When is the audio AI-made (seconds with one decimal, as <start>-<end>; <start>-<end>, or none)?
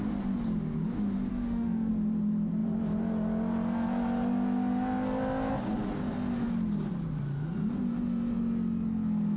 1.3-1.9